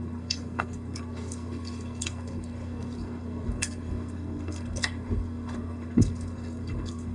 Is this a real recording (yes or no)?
no